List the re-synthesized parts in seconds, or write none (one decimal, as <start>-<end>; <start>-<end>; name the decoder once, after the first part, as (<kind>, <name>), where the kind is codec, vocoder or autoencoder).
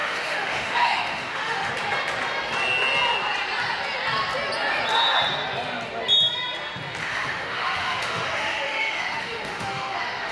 0.0-1.7 (autoencoder, DAC-VAE); 7.0-10.3